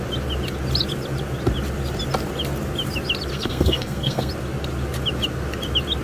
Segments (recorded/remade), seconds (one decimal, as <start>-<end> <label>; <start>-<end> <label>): 0.0-3.3 recorded; 3.3-4.3 remade; 4.3-6.0 recorded